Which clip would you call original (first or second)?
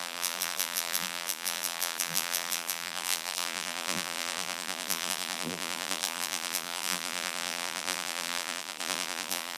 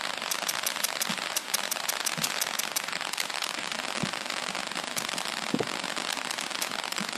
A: second